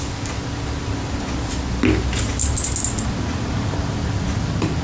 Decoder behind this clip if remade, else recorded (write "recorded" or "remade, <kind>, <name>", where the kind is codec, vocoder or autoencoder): recorded